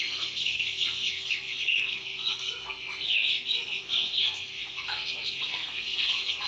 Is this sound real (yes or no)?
no